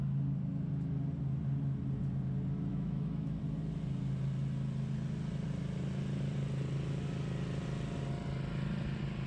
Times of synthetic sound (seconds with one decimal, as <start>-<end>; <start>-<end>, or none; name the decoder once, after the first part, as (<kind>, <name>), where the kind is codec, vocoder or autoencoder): 2.7-3.4 (autoencoder, DAC-VAE)